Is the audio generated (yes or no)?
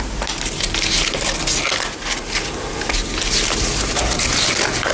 no